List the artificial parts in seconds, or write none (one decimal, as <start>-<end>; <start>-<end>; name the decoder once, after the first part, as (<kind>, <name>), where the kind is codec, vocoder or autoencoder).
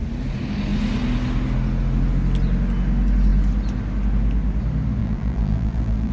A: 5.0-6.1 (vocoder, BigVGAN v2)